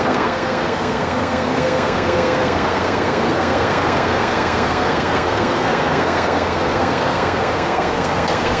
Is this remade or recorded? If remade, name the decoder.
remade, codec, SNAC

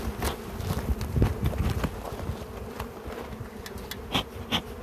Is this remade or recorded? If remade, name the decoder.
recorded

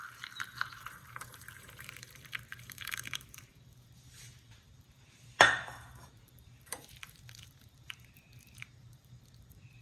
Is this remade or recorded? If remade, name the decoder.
remade, vocoder, BigVGAN v2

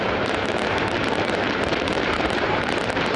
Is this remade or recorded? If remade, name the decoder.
remade, vocoder, BigVGAN v2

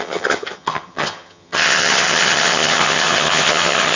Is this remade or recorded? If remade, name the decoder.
remade, vocoder, HiFi-GAN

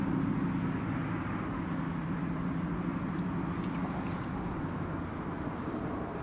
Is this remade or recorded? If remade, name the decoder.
recorded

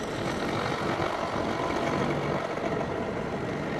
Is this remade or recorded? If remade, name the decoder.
recorded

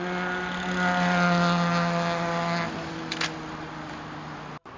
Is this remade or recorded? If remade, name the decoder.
recorded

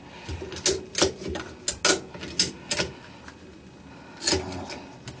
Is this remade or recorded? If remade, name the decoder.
recorded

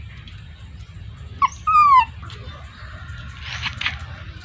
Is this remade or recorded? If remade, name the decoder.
recorded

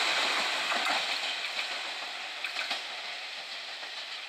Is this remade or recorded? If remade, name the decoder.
remade, vocoder, BigVGAN v2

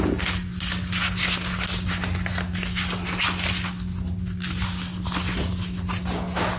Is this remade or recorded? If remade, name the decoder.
recorded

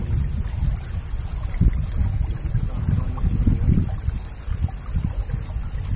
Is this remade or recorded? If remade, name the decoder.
recorded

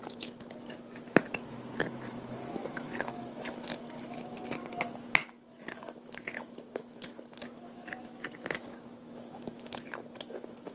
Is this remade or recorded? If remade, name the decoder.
remade, autoencoder, DAC-VAE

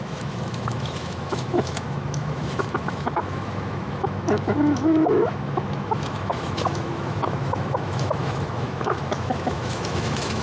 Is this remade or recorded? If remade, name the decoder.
remade, autoencoder, DAC-VAE